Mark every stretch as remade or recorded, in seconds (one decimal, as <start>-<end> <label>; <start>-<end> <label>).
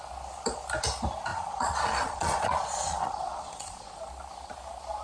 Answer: 0.0-1.3 recorded; 1.3-4.1 remade; 4.1-5.0 recorded